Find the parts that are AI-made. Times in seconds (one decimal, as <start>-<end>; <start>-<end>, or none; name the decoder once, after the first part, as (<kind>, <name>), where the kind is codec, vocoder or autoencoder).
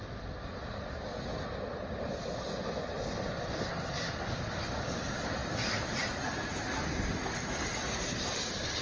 none